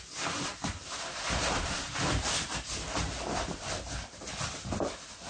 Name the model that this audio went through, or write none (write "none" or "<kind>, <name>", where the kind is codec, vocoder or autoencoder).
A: none